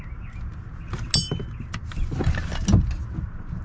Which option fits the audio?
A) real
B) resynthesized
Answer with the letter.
A